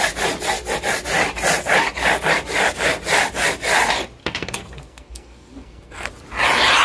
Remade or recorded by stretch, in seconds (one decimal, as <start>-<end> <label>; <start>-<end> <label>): 0.0-4.2 recorded; 4.2-6.1 remade; 6.1-6.8 recorded